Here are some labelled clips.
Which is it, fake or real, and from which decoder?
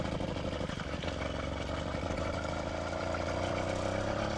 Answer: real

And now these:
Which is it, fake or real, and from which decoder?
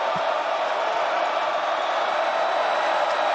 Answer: real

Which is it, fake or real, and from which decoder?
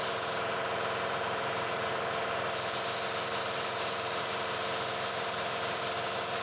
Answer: fake, vocoder, BigVGAN v2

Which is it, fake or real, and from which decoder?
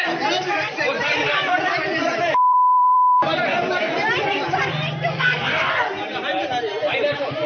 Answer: fake, vocoder, BigVGAN v2